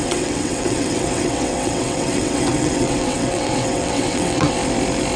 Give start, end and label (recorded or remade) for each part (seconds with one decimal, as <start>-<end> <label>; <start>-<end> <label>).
0.0-4.6 remade; 4.6-5.2 recorded